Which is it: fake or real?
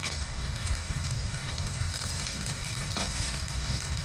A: fake